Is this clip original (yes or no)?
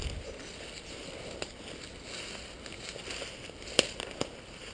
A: yes